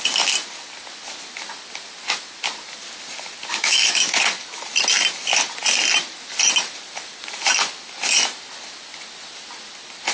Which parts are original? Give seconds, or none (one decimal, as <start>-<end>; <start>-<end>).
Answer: 0.0-3.5; 4.2-10.1